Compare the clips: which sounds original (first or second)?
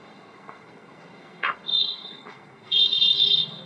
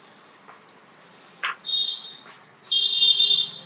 second